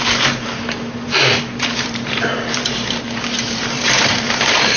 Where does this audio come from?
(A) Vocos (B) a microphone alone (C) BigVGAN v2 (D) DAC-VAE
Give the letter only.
C